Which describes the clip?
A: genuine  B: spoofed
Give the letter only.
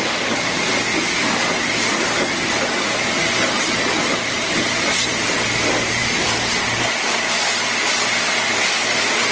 A